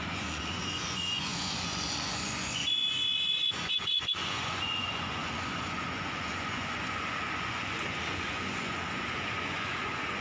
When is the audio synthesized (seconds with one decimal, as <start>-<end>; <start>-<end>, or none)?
0.0-10.2